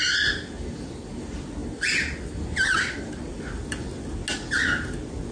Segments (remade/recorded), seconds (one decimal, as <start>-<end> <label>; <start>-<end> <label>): 0.0-5.3 recorded

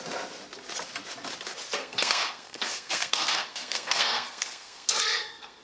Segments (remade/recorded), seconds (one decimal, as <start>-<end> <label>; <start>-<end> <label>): 0.0-1.8 recorded; 1.8-5.6 remade

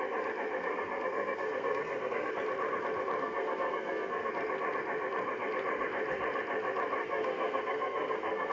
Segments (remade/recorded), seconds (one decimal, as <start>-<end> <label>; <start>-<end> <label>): 0.0-0.6 recorded; 0.6-2.3 remade; 2.3-3.2 recorded; 3.2-4.3 remade; 4.3-7.0 recorded; 7.0-8.5 remade

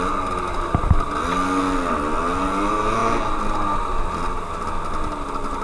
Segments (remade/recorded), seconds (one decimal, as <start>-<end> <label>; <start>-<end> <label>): 0.0-5.6 recorded

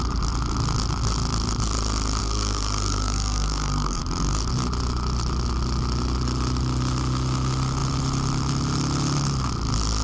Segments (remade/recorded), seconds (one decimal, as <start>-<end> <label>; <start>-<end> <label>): 0.0-2.2 recorded; 2.2-4.0 remade; 4.0-10.0 recorded

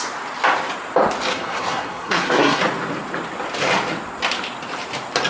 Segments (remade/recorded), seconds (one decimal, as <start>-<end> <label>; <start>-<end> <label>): 0.0-1.3 recorded; 1.3-2.6 remade; 2.6-5.3 recorded